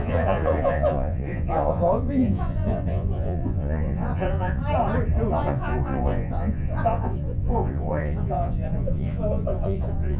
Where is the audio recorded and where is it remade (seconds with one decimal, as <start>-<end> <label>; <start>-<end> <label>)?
0.0-4.6 remade; 4.6-5.3 recorded; 5.3-10.2 remade

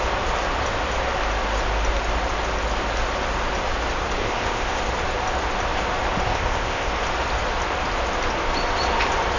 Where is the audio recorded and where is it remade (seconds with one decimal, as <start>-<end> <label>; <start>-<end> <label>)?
0.0-4.2 recorded; 4.2-4.8 remade; 4.8-6.3 recorded; 6.3-6.9 remade; 6.9-9.4 recorded

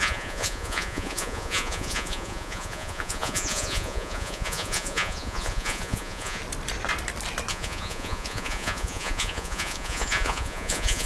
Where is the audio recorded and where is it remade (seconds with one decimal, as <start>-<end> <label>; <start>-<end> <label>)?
0.0-6.4 remade; 6.4-7.5 recorded; 7.5-11.1 remade

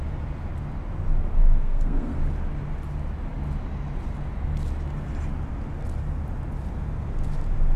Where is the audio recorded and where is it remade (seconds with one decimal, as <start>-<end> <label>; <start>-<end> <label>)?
0.0-1.4 recorded; 1.4-2.2 remade; 2.2-7.8 recorded

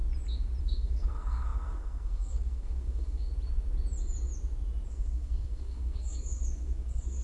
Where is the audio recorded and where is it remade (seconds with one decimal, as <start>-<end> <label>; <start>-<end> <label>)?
0.0-0.6 recorded; 0.6-3.3 remade; 3.3-4.9 recorded; 4.9-7.2 remade

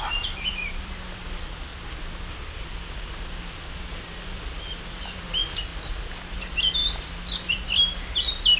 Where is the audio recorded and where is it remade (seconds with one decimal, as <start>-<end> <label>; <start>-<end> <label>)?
0.0-1.7 remade; 1.7-2.3 recorded; 2.3-5.7 remade; 5.7-6.3 recorded; 6.3-8.6 remade

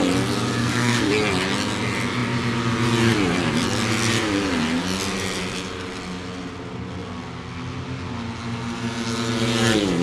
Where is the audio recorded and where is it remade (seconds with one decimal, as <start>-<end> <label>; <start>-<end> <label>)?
0.0-0.6 recorded; 0.6-1.1 remade; 1.1-10.0 recorded

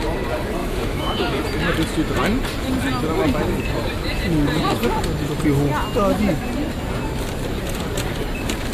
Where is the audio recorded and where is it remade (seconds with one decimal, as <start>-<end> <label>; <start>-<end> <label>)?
0.0-0.6 recorded; 0.6-1.4 remade; 1.4-8.7 recorded